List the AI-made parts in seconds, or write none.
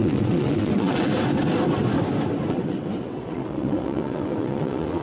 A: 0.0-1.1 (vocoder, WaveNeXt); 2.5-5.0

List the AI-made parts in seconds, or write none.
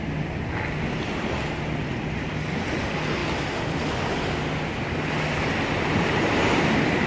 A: none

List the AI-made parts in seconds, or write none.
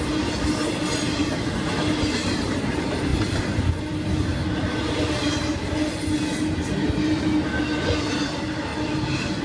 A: none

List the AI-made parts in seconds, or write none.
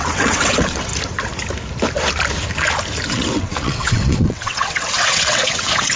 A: 0.0-0.9 (vocoder, WaveNeXt); 3.1-6.0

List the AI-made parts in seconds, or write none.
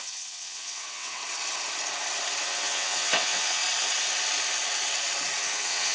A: 0.0-1.2 (vocoder, WaveNeXt); 2.4-3.6; 5.4-5.9